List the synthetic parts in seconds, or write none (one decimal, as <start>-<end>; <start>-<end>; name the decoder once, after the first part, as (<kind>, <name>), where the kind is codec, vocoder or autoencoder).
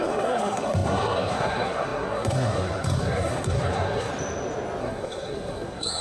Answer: 0.0-4.1 (codec, SNAC); 4.8-6.0